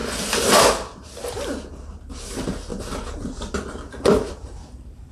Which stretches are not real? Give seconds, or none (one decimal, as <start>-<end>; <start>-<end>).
1.7-2.7; 4.3-5.1